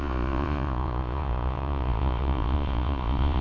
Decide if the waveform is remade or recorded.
remade